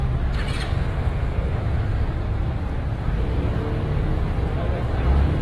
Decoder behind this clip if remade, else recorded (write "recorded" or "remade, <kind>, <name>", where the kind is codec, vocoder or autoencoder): recorded